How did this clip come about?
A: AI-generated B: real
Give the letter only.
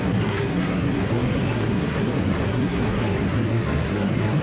A